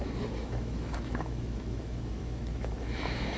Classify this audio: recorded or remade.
remade